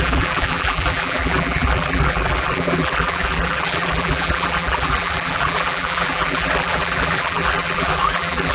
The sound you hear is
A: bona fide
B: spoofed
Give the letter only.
B